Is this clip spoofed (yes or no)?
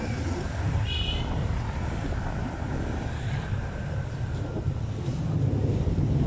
no